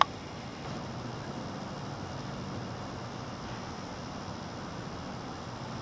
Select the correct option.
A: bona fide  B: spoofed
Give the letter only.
A